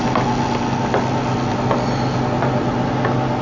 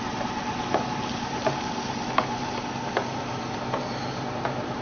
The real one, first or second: first